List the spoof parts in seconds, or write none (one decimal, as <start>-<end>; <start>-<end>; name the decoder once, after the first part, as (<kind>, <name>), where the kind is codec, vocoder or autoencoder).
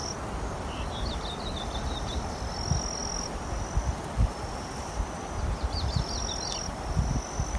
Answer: 0.0-2.5 (vocoder, BigVGAN v2); 3.0-6.7